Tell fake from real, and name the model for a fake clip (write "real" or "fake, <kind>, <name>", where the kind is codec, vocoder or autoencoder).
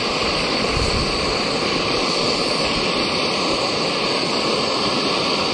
fake, vocoder, BigVGAN v2